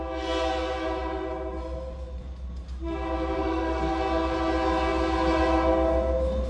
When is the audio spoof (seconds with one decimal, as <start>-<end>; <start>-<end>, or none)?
3.4-3.9